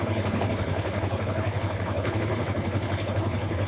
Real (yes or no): no